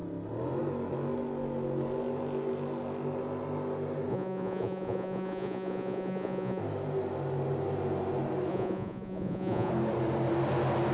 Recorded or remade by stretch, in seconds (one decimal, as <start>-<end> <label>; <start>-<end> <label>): 0.0-4.1 recorded; 4.1-6.6 remade; 6.6-8.5 recorded; 8.5-9.7 remade; 9.7-10.9 recorded